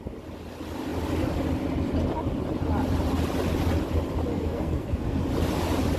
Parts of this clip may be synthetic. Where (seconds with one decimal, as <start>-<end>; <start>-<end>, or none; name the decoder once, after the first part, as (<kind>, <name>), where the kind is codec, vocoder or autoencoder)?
4.3-5.2 (codec, SNAC)